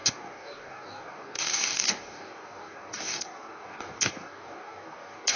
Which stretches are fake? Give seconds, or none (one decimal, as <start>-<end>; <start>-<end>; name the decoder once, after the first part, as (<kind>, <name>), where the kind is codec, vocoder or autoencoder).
0.0-5.4 (codec, DAC)